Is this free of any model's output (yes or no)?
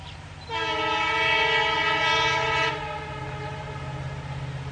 yes